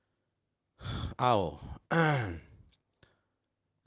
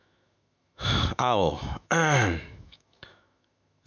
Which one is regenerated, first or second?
second